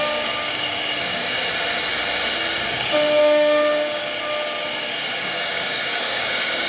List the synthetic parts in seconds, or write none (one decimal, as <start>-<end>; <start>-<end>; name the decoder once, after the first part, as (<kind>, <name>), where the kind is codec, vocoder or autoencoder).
0.0-1.4 (codec, DAC); 2.7-4.0; 4.8-6.7